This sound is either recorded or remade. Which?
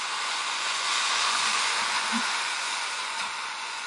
remade